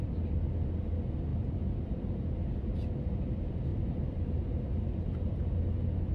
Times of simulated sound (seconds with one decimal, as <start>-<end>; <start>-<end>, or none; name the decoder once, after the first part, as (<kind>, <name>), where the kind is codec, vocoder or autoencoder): 3.7-4.4 (vocoder, BigVGAN v2)